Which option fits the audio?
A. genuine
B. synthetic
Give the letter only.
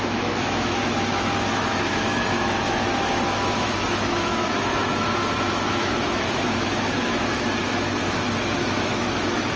B